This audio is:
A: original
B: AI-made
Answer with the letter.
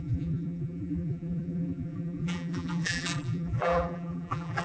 B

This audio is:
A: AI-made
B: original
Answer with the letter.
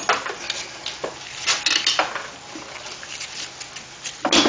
B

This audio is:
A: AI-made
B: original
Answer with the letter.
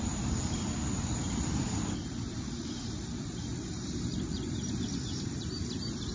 A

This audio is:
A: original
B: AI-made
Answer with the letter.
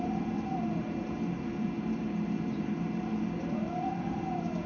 B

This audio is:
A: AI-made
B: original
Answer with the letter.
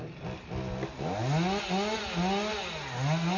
B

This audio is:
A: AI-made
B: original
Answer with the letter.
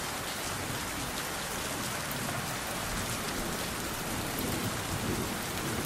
B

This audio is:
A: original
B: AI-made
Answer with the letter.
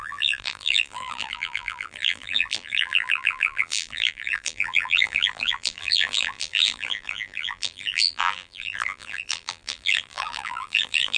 B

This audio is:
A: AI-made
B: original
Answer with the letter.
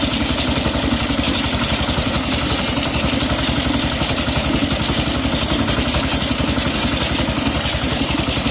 A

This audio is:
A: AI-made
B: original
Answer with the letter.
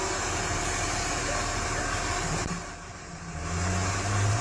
A